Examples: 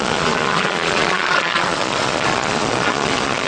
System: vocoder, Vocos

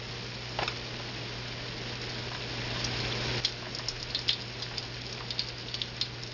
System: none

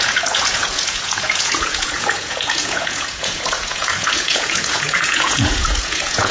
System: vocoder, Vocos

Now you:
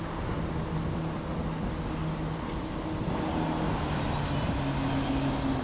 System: none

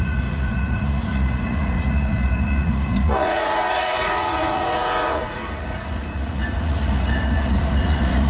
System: vocoder, Vocos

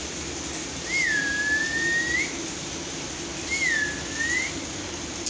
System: none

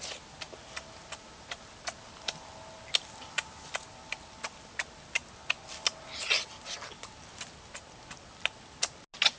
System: none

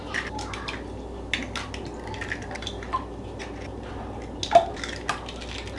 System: none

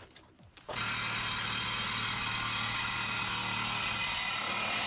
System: none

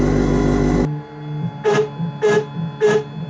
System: none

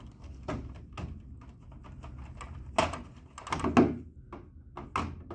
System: none